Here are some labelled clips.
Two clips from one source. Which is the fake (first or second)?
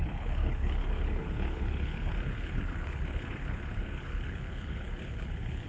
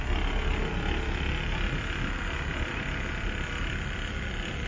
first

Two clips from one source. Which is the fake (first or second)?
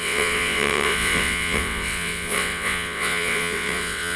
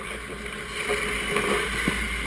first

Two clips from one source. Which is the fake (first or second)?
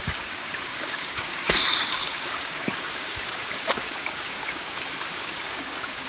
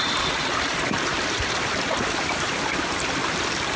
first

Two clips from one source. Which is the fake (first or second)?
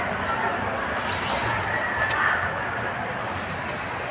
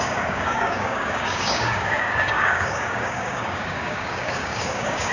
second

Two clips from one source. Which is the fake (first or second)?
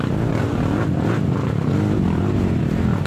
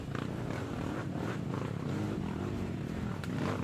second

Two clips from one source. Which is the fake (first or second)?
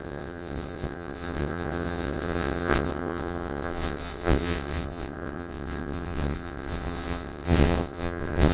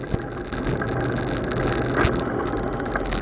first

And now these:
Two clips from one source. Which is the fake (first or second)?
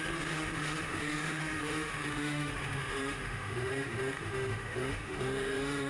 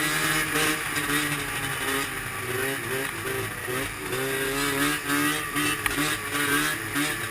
first